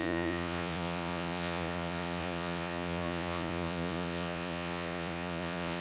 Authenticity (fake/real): fake